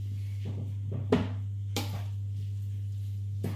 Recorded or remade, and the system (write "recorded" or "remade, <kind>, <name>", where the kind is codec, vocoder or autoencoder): recorded